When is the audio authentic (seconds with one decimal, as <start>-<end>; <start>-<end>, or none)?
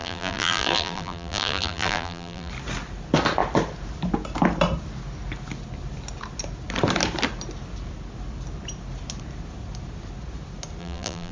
2.5-10.8